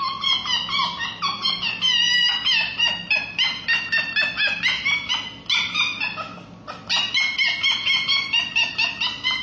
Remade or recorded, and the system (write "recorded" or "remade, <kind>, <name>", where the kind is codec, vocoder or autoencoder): recorded